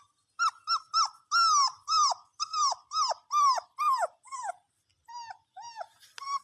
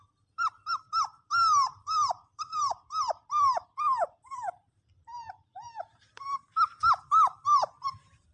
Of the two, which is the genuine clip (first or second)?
first